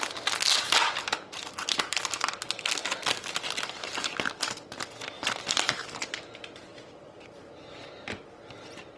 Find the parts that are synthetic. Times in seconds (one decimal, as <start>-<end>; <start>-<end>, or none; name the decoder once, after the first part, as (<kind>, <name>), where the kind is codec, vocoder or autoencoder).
6.7-8.2 (vocoder, BigVGAN v2)